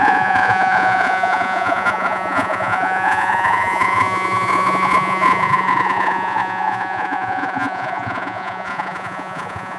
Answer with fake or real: fake